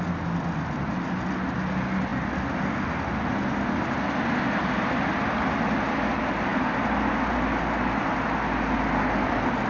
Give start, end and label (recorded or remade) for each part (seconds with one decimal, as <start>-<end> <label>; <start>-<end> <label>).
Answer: 0.0-9.7 recorded